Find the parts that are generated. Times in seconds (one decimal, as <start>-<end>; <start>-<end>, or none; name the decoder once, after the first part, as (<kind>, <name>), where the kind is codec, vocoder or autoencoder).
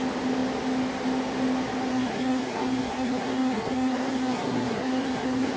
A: 1.9-5.6 (codec, SNAC)